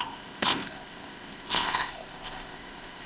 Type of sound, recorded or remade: remade